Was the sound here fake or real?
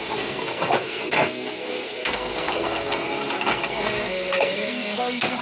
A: fake